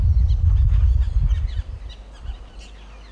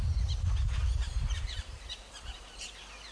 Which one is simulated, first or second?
second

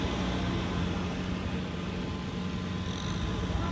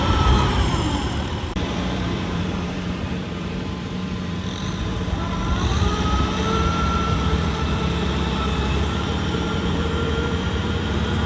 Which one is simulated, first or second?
second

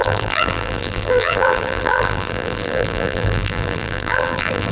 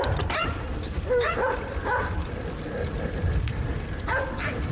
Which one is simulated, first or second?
first